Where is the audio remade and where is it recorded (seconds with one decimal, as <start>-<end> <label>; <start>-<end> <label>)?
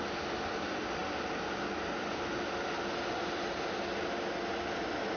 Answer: 0.0-5.2 recorded